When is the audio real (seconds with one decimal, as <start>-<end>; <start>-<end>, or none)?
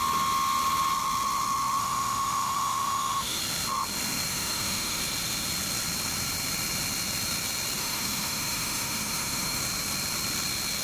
0.0-1.8; 3.4-4.3; 5.0-7.8; 9.6-10.8